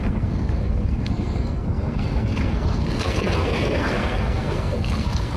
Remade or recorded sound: remade